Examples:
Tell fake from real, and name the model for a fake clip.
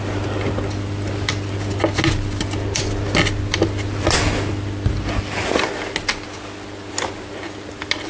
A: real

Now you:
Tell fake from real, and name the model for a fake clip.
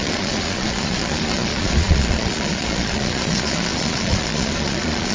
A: fake, vocoder, Vocos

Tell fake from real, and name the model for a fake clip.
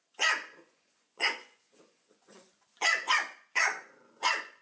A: fake, vocoder, Vocos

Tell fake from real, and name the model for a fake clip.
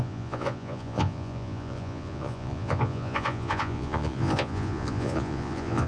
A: fake, vocoder, Vocos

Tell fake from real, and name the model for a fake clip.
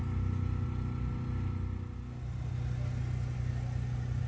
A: real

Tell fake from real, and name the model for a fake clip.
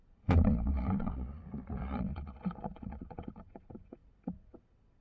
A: fake, vocoder, Vocos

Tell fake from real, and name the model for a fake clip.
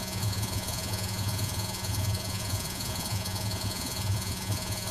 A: fake, vocoder, Vocos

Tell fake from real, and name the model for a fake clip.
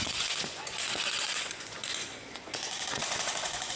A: fake, vocoder, Vocos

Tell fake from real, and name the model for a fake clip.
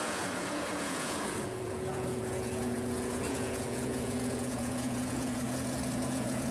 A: fake, vocoder, Vocos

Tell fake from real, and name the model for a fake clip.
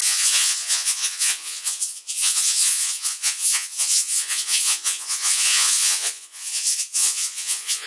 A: fake, vocoder, Vocos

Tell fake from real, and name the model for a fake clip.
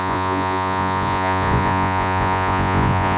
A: fake, vocoder, Vocos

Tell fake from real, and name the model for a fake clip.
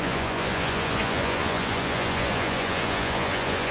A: fake, vocoder, Vocos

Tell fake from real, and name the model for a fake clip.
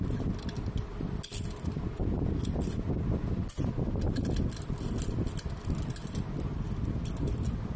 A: real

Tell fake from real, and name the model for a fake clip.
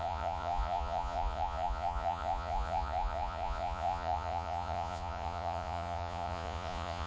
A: fake, vocoder, Vocos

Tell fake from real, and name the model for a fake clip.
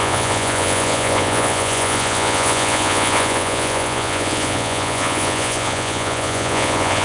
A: fake, vocoder, Vocos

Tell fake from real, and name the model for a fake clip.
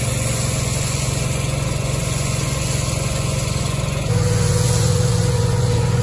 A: fake, vocoder, Vocos